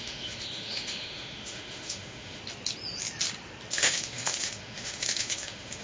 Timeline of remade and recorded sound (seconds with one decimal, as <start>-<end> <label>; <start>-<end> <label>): 0.0-2.4 remade; 2.4-3.7 recorded; 3.7-5.8 remade